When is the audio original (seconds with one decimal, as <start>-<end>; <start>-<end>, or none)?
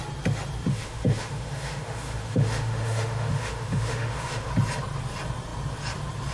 0.0-0.7; 4.5-6.3